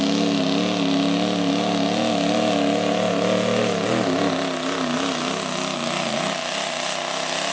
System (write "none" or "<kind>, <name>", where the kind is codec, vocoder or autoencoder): none